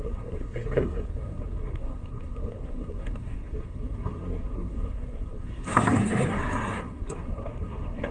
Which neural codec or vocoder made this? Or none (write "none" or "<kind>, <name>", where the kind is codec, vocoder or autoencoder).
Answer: codec, SNAC